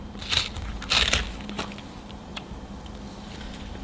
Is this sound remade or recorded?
recorded